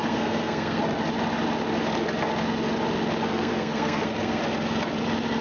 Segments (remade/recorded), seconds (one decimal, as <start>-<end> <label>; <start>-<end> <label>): 0.0-0.8 remade; 0.8-3.3 recorded; 3.3-4.4 remade; 4.4-5.4 recorded